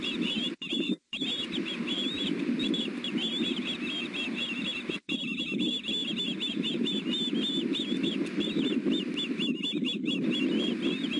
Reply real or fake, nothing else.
real